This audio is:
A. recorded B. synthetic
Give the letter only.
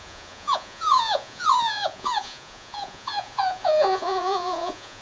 B